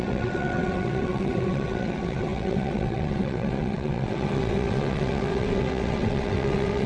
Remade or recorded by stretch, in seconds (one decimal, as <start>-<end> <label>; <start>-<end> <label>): 0.0-6.9 remade